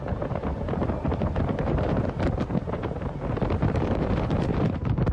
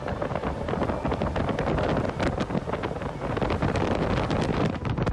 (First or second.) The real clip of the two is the second